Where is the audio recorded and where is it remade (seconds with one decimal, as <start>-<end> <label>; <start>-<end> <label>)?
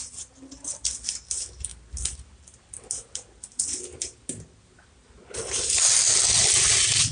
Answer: 0.0-7.1 recorded